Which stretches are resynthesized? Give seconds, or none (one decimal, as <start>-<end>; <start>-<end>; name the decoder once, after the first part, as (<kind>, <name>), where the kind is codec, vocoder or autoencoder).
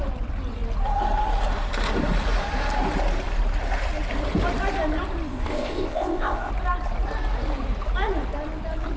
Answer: 5.3-6.5 (codec, ZipCodec)